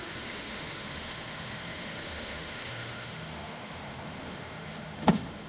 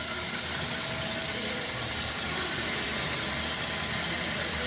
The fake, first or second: first